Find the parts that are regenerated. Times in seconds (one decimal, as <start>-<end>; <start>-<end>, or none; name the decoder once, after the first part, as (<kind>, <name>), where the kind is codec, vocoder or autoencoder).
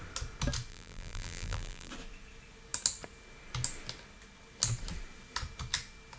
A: 0.7-1.9 (vocoder, BigVGAN v2)